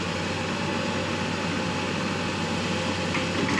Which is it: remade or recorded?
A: recorded